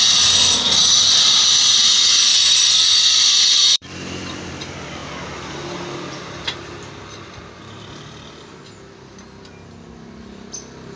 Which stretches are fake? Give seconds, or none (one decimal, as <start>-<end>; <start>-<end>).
2.3-4.5